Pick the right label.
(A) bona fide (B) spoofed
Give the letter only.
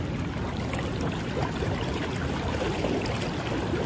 A